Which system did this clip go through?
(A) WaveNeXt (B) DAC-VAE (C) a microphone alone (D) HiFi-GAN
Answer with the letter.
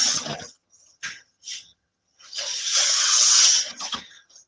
D